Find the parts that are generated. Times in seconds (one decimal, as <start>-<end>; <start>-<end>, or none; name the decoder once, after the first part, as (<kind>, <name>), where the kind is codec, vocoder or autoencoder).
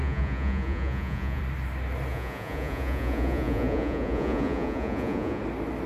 0.0-1.4 (vocoder, Vocos); 2.1-5.4